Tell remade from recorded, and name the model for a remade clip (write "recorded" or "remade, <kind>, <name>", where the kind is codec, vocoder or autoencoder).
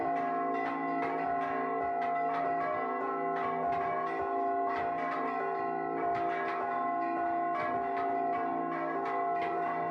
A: recorded